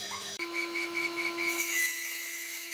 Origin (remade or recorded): remade